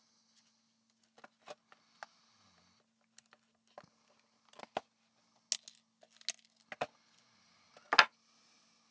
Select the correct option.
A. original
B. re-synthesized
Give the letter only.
A